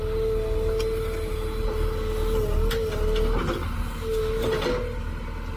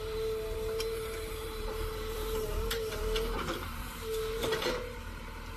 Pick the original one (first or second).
first